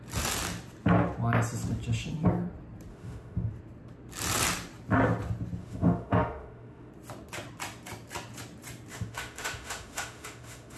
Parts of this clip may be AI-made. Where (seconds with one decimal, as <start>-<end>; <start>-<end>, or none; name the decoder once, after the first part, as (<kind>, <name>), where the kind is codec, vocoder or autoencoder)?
2.9-3.5 (autoencoder, DAC-VAE); 5.6-6.9; 8.9-10.8